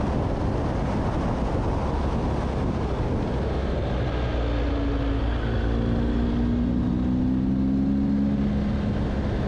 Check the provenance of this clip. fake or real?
real